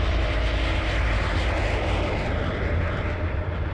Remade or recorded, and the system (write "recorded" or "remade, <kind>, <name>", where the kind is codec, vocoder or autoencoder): recorded